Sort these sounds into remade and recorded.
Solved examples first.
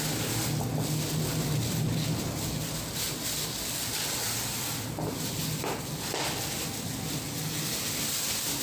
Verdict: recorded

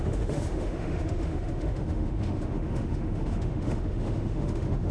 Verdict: remade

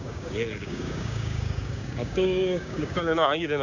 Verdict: remade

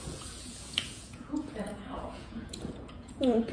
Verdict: remade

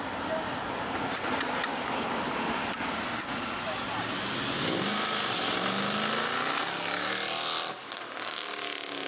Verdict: recorded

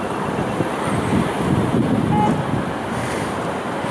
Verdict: recorded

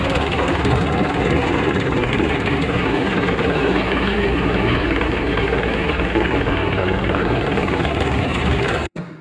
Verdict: remade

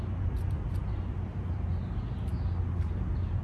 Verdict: recorded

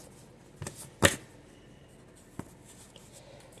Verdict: recorded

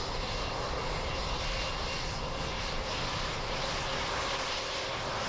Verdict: recorded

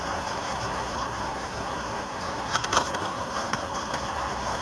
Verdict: remade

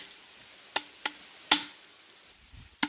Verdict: recorded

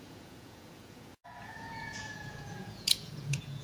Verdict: remade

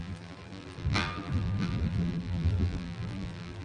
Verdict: remade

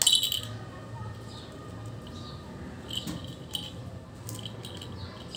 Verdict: recorded